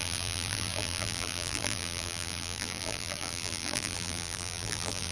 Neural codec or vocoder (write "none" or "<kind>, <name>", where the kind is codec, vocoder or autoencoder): vocoder, BigVGAN v2